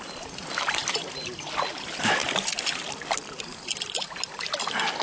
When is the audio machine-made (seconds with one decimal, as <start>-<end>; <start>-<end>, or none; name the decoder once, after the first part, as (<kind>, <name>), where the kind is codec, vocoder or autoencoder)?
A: none